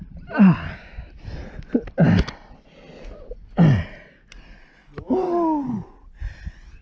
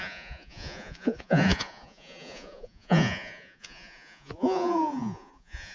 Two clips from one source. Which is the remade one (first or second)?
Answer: second